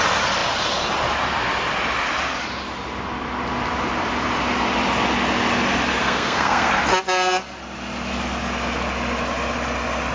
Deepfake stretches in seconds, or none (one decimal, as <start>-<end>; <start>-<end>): 6.0-6.7